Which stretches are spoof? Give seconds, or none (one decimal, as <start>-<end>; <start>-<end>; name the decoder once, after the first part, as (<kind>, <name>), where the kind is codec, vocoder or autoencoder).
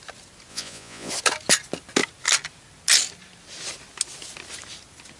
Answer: 0.5-1.1 (vocoder, Vocos)